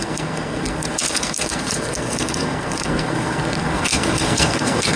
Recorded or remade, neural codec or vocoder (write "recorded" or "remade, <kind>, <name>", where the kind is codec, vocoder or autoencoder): remade, codec, SNAC